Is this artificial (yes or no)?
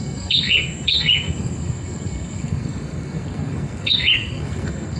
yes